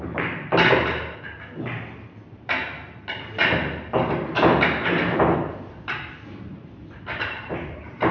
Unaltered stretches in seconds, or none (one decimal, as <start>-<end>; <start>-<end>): 0.0-8.1